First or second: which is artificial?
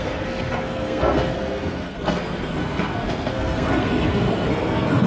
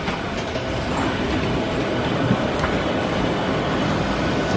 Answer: first